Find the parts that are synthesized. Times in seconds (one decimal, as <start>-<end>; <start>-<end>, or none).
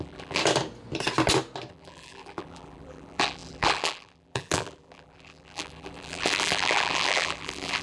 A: 0.0-0.4; 1.7-7.8